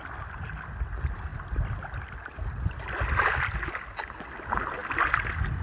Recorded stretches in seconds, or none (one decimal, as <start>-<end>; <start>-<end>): 0.0-5.6